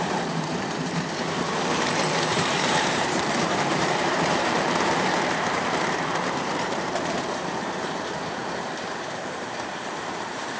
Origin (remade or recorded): remade